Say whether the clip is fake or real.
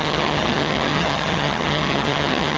fake